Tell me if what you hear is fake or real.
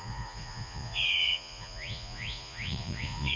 fake